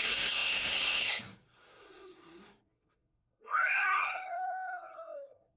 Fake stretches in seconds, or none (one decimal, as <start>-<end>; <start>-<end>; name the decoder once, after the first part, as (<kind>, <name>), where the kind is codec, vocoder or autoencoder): 0.0-5.6 (codec, SNAC)